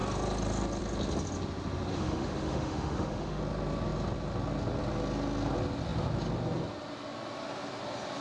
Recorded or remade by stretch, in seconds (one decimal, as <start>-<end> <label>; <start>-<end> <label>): 0.0-1.9 recorded; 1.9-3.4 remade; 3.4-8.2 recorded